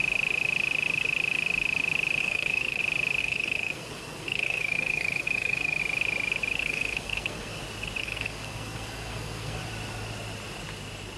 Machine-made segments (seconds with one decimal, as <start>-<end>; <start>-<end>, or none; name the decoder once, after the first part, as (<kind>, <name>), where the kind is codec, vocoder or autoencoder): 2.2-2.8 (codec, SNAC); 3.2-5.8; 6.6-7.6; 8.0-9.6